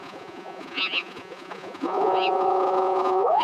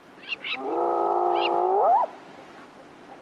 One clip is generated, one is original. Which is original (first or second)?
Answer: second